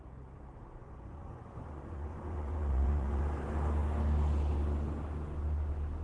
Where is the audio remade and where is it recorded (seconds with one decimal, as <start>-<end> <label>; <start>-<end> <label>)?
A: 0.0-0.8 recorded; 0.8-3.2 remade; 3.2-6.0 recorded